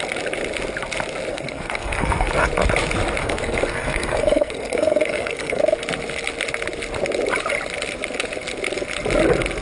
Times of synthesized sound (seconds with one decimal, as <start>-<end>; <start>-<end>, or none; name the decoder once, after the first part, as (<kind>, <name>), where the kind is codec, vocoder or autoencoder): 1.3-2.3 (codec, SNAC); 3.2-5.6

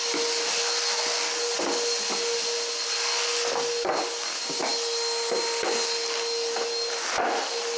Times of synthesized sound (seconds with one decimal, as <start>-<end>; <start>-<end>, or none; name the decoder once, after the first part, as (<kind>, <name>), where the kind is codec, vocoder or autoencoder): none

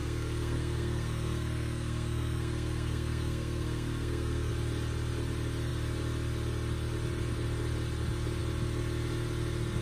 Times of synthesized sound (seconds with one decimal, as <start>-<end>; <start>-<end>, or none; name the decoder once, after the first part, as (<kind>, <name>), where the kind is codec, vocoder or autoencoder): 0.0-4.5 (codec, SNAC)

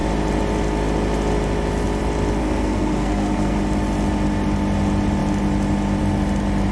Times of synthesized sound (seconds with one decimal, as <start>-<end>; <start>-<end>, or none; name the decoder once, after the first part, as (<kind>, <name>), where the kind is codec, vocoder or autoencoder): 2.4-3.6 (codec, SNAC)

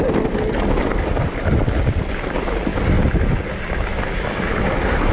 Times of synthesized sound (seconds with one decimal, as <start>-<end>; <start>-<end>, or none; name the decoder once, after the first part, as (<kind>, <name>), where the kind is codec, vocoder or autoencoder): none